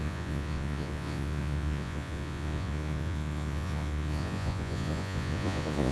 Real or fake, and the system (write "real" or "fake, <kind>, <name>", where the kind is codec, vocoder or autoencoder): fake, vocoder, Vocos